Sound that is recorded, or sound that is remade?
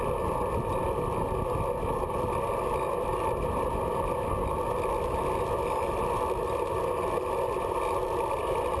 recorded